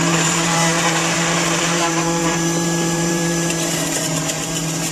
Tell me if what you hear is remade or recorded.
remade